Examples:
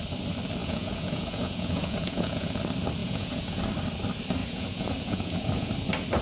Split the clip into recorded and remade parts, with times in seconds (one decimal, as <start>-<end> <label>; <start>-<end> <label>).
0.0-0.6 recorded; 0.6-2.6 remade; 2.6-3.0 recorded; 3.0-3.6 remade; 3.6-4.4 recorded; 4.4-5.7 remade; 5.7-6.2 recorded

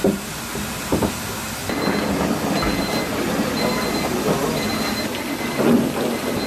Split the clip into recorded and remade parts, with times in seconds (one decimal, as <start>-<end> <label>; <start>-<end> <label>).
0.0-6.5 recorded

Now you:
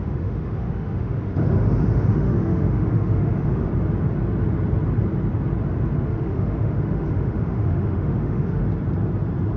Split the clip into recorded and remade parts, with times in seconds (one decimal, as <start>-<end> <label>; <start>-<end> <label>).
0.0-3.7 remade; 3.7-6.1 recorded; 6.1-8.6 remade; 8.6-9.6 recorded

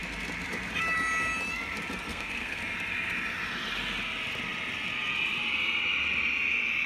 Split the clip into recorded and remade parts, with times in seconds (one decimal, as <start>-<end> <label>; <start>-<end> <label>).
0.0-2.1 recorded; 2.1-2.6 remade; 2.6-6.9 recorded

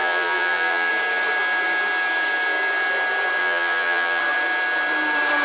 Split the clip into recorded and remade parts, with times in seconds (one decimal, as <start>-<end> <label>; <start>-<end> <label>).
0.0-0.9 remade; 0.9-3.4 recorded; 3.4-4.2 remade; 4.2-5.4 recorded

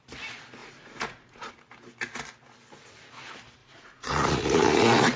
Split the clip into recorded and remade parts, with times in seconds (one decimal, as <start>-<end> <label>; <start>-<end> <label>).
0.0-0.6 recorded; 0.6-1.5 remade; 1.5-3.6 recorded; 3.6-5.2 remade

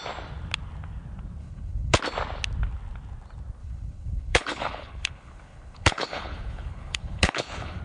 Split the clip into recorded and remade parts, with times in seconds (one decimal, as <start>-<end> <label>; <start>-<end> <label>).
0.0-1.4 recorded; 1.4-2.0 remade; 2.0-3.6 recorded; 3.6-7.8 remade

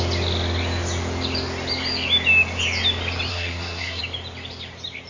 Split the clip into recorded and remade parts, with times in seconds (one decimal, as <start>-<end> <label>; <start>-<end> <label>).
0.0-3.3 recorded; 3.3-4.0 remade; 4.0-5.1 recorded